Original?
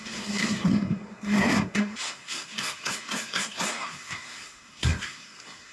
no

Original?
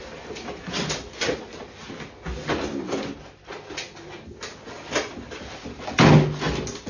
yes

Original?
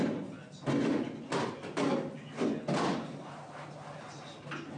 yes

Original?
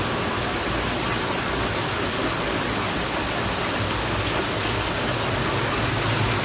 yes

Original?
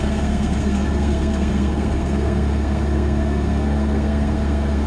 no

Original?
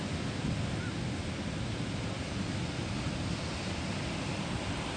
yes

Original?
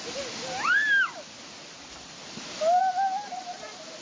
yes